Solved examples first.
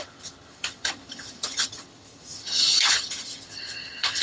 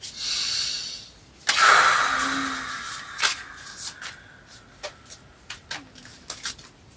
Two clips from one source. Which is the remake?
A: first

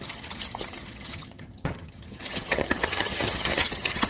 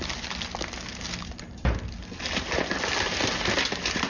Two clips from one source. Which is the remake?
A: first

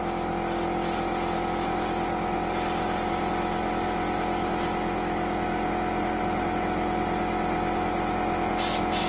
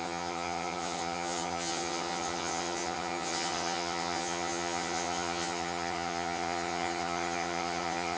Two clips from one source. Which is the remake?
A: second